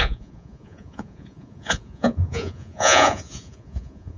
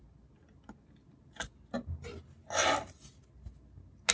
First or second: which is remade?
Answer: first